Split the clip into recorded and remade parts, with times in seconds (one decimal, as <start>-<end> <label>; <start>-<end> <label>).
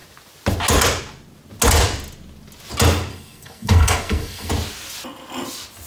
0.0-3.1 recorded; 3.1-4.5 remade; 4.5-5.9 recorded